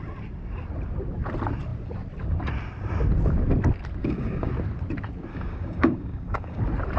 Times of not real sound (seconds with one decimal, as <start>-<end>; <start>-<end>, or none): 4.0-4.5; 5.3-6.6